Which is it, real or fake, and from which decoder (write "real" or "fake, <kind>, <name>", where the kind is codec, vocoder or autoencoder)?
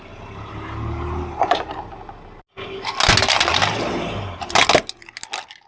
real